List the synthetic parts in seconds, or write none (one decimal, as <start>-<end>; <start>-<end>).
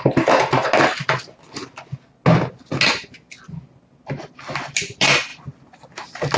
none